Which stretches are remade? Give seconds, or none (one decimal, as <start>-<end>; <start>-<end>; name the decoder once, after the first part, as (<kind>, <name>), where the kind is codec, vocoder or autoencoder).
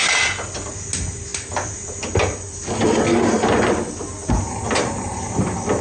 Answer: none